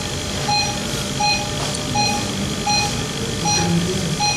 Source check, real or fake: real